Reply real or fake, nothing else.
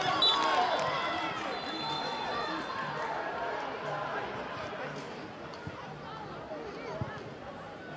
real